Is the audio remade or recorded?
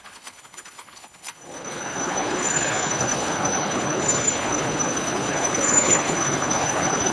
remade